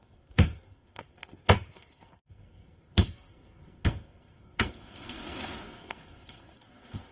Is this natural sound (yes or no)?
no